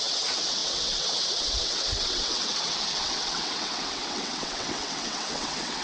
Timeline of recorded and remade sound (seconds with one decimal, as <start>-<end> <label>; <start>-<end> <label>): 0.0-5.8 remade